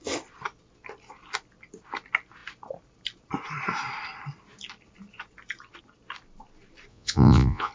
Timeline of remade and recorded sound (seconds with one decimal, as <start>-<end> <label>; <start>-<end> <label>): 0.0-6.9 recorded; 6.9-7.7 remade

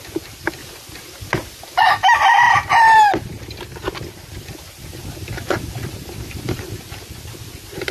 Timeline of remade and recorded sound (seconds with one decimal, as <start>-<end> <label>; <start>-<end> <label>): 0.0-0.6 remade; 0.6-1.8 recorded; 1.8-5.0 remade; 5.0-6.2 recorded; 6.2-7.9 remade

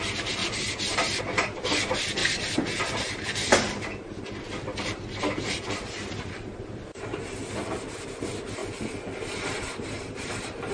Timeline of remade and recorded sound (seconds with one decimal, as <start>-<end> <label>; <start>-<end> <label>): 0.0-0.4 remade; 0.4-1.2 recorded; 1.2-2.2 remade; 2.2-4.8 recorded; 4.8-7.1 remade; 7.1-8.0 recorded; 8.0-10.7 remade

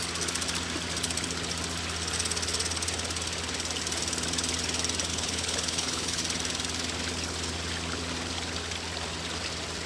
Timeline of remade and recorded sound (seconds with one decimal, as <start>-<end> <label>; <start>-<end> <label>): 0.0-5.1 recorded; 5.1-6.2 remade; 6.2-9.9 recorded

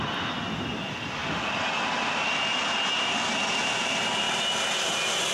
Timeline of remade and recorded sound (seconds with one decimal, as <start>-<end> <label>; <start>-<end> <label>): 0.0-1.2 recorded; 1.2-4.4 remade; 4.4-5.3 recorded

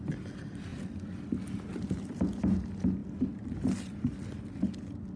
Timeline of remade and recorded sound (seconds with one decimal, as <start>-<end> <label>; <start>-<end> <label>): 0.0-5.2 recorded

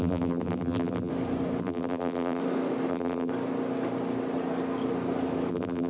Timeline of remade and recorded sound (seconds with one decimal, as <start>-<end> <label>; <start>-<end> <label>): 0.0-1.1 remade; 1.1-1.6 recorded; 1.6-2.4 remade; 2.4-2.9 recorded; 2.9-3.3 remade; 3.3-5.5 recorded; 5.5-5.9 remade

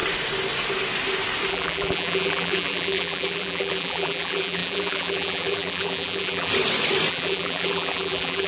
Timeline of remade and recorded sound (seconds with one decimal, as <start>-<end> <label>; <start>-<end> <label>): 0.0-1.5 recorded; 1.5-6.5 remade; 6.5-7.1 recorded; 7.1-8.5 remade